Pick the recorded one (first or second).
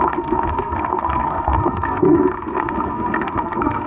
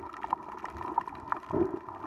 second